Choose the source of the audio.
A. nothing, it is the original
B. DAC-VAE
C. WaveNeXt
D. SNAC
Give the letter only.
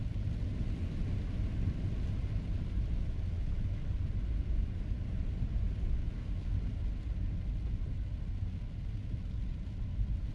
A